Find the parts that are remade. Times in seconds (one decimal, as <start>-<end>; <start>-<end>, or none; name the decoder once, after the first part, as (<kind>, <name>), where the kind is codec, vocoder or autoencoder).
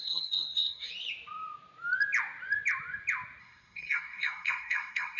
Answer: 0.0-0.9 (codec, SNAC); 3.4-5.2